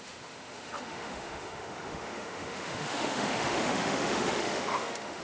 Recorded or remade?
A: remade